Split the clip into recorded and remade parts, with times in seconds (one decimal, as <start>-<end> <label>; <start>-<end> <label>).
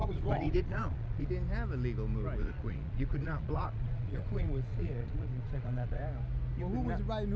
0.0-1.3 remade; 1.3-2.4 recorded; 2.4-6.0 remade; 6.0-7.4 recorded